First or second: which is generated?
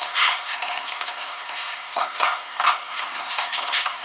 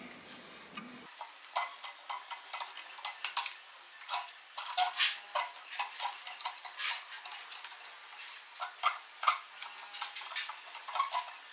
first